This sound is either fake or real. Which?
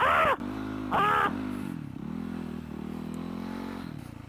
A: real